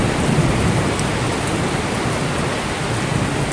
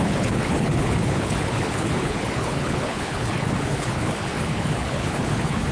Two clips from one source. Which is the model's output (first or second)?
second